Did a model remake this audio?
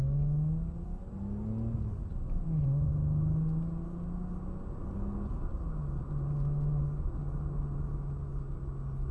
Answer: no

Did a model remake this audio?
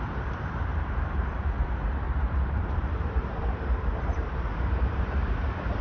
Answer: yes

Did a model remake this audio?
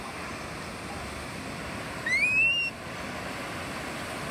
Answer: no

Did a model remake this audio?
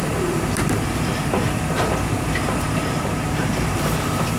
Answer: yes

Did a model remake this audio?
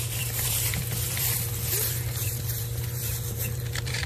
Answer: yes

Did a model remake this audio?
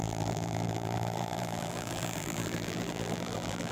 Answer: yes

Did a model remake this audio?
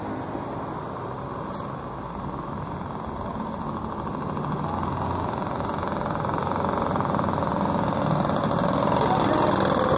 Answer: no